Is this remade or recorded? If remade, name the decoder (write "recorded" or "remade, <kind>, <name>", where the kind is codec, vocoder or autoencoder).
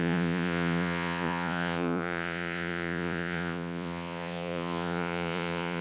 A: remade, vocoder, Vocos